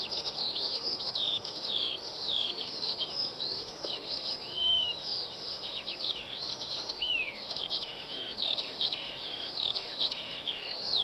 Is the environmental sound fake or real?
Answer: fake